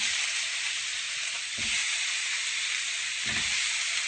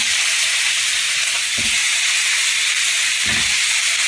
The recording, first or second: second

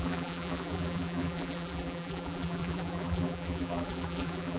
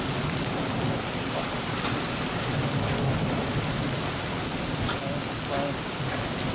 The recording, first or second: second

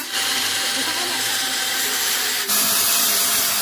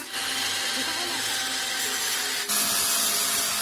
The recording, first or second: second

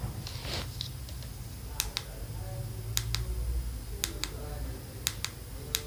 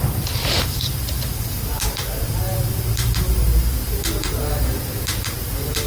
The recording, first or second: first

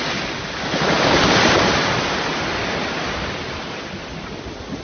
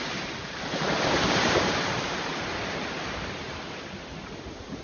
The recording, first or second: first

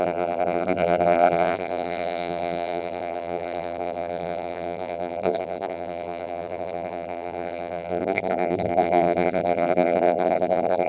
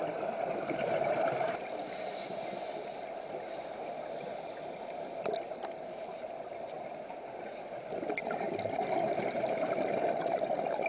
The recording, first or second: second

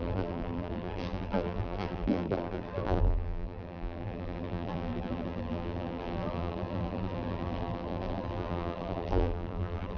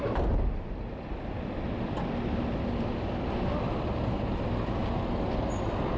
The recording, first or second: second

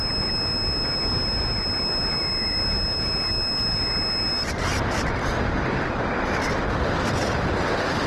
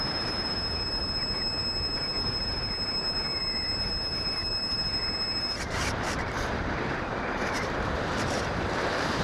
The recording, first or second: first